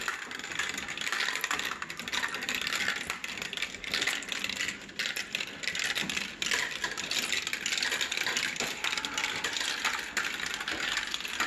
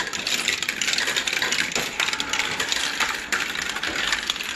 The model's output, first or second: second